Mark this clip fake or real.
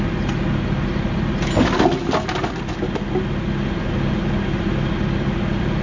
real